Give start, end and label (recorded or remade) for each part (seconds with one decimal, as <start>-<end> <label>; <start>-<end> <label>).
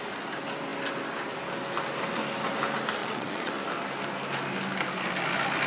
0.0-3.0 recorded; 3.0-3.5 remade; 3.5-5.7 recorded